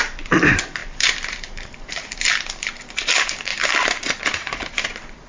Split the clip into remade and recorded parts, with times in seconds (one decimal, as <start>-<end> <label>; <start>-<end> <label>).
0.0-3.5 remade; 3.5-4.3 recorded; 4.3-5.3 remade